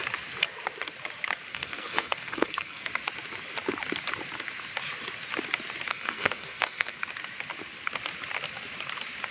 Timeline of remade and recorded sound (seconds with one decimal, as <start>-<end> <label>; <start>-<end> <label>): 0.0-1.5 recorded; 1.5-2.9 remade; 2.9-5.9 recorded; 5.9-7.0 remade; 7.0-9.3 recorded

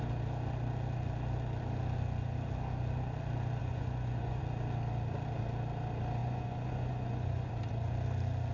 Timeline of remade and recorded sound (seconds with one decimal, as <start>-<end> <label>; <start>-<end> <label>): 0.0-3.6 recorded; 3.6-4.4 remade; 4.4-6.2 recorded; 6.2-7.5 remade; 7.5-8.5 recorded

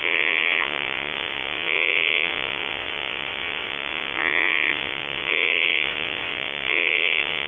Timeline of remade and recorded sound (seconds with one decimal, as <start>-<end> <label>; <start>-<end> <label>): 0.0-7.5 remade

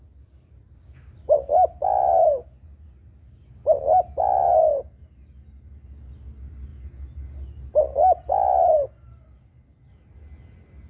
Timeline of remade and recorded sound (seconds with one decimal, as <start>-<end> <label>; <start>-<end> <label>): 0.0-10.9 recorded

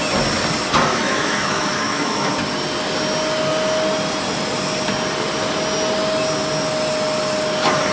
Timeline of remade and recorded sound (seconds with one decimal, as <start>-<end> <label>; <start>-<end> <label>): 0.0-0.9 recorded; 0.9-2.3 remade; 2.3-7.9 recorded

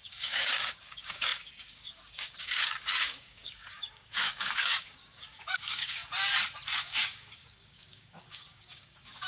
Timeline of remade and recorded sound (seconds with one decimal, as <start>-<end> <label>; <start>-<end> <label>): 0.0-6.0 remade; 6.0-6.8 recorded; 6.8-9.3 remade

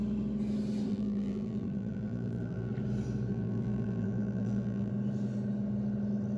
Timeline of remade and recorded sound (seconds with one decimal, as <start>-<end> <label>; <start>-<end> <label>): 0.0-0.9 recorded; 0.9-2.7 remade; 2.7-3.3 recorded; 3.3-4.9 remade; 4.9-6.4 recorded

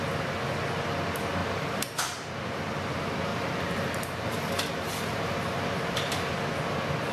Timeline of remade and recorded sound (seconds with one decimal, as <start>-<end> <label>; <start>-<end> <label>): 0.0-1.4 recorded; 1.4-2.3 remade; 2.3-3.3 recorded; 3.3-6.4 remade; 6.4-7.1 recorded